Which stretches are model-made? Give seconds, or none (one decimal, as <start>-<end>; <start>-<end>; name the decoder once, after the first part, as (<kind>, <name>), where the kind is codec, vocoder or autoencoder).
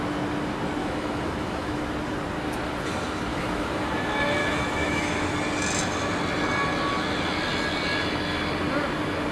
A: 0.8-1.8 (autoencoder, DAC-VAE); 3.3-3.9; 4.4-5.3